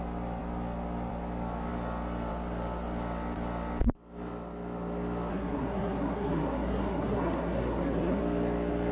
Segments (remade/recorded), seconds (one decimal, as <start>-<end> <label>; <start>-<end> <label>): 0.0-5.3 recorded; 5.3-8.2 remade; 8.2-8.9 recorded